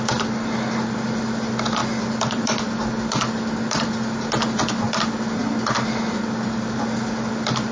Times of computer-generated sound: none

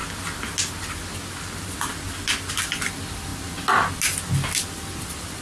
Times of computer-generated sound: 2.5-3.3

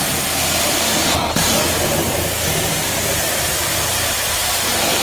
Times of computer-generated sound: none

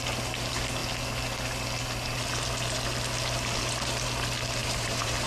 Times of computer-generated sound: 4.6-5.3

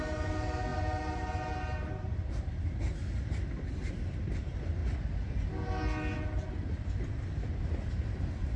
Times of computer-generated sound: 0.0-4.8; 8.2-8.6

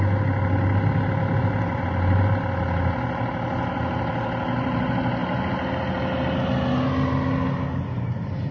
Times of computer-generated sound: none